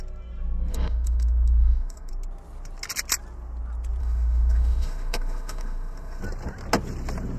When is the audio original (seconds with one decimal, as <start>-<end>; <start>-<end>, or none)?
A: 0.0-0.7; 2.1-4.0; 6.2-7.4